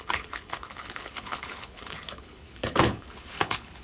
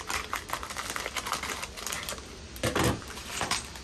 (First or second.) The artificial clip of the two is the first